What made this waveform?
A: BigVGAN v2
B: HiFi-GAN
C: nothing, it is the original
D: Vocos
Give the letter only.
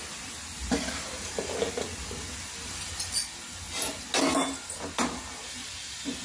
C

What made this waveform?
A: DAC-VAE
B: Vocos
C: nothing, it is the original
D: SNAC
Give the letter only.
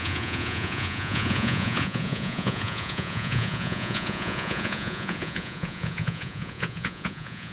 B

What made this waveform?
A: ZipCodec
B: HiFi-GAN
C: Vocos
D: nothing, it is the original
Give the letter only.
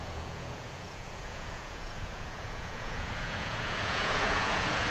C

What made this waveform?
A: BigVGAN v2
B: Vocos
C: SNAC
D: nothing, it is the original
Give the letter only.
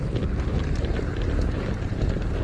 D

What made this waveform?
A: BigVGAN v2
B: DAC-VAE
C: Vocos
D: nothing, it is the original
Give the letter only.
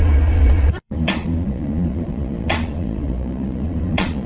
C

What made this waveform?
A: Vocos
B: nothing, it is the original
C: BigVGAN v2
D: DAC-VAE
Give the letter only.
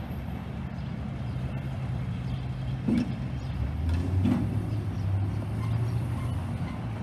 B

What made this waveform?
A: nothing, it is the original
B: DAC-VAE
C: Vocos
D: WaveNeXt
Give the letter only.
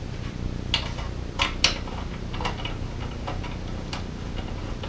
A